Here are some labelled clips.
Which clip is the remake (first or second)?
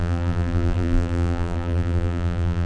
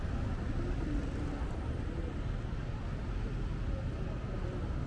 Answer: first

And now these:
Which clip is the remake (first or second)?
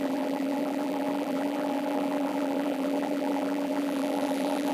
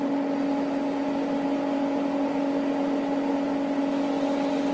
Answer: first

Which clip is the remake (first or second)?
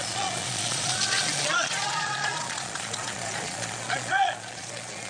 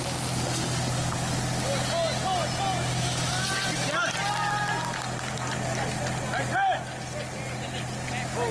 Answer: first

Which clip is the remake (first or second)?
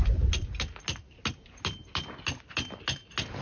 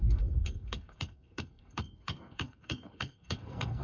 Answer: second